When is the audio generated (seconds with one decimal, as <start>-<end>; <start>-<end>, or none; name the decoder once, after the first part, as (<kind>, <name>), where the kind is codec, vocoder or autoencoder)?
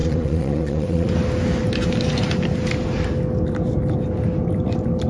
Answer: 0.0-1.1 (vocoder, Vocos)